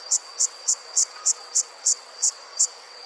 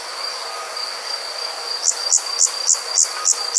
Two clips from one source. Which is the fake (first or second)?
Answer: first